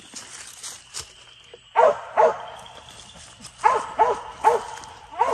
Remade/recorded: recorded